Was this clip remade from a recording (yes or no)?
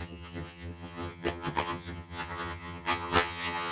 yes